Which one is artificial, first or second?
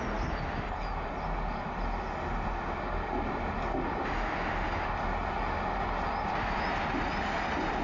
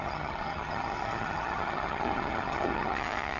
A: second